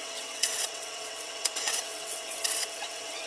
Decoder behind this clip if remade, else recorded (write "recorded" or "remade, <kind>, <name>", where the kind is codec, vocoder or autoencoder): remade, vocoder, WaveNeXt